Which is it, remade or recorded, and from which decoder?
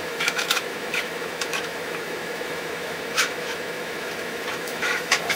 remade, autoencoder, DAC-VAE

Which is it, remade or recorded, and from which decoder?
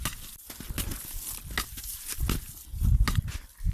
recorded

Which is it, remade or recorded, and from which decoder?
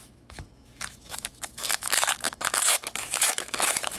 remade, autoencoder, DAC-VAE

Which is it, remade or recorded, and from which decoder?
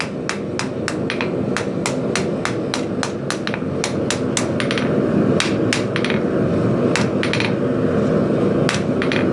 recorded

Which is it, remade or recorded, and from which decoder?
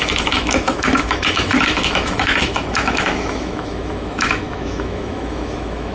remade, autoencoder, DAC-VAE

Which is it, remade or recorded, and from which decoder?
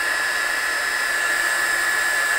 recorded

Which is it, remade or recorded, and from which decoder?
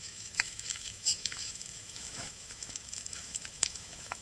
remade, autoencoder, DAC-VAE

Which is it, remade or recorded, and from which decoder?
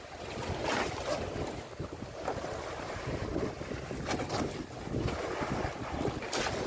recorded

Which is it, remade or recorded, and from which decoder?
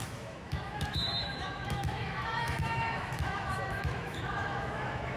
remade, autoencoder, DAC-VAE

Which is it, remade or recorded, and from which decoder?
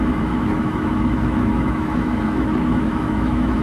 remade, autoencoder, DAC-VAE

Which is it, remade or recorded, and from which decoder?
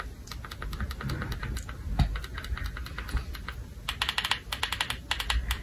recorded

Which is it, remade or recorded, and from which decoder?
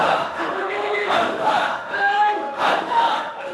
remade, autoencoder, DAC-VAE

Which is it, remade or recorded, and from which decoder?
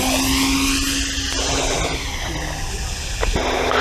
recorded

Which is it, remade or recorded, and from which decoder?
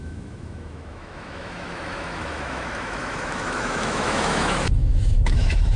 remade, autoencoder, DAC-VAE